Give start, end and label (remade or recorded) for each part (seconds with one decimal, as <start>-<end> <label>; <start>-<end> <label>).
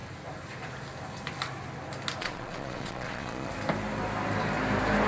0.0-2.2 recorded; 2.2-3.5 remade; 3.5-5.1 recorded